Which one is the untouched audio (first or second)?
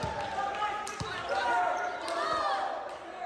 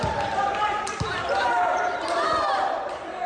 first